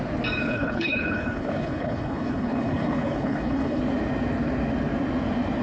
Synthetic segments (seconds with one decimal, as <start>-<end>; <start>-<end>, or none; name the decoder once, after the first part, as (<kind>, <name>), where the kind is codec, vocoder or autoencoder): 0.4-3.8 (codec, HILCodec)